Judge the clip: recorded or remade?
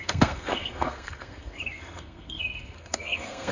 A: remade